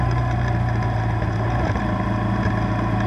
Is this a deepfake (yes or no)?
no